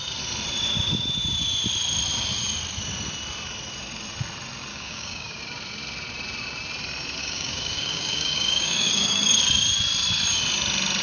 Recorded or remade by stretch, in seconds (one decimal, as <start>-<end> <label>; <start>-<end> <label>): 0.0-4.7 recorded; 4.7-5.4 remade; 5.4-7.2 recorded; 7.2-9.4 remade; 9.4-11.0 recorded

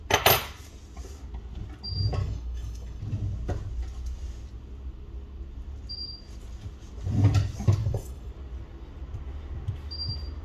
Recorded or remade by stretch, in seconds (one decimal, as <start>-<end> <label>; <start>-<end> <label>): 0.0-2.2 recorded; 2.2-3.0 remade; 3.0-7.8 recorded; 7.8-8.3 remade; 8.3-10.4 recorded

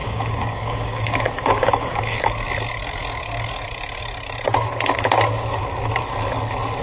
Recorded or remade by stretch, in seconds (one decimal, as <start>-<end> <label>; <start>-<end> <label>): 0.0-2.3 remade; 2.3-6.8 recorded

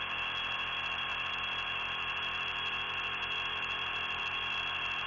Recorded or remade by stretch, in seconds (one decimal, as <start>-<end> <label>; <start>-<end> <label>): 0.0-5.1 recorded

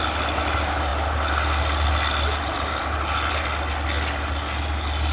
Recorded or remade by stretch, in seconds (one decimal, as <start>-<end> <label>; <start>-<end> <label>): 0.0-5.1 recorded